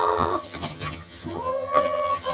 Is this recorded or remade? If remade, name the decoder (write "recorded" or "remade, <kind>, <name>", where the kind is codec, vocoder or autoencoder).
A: remade, vocoder, HiFi-GAN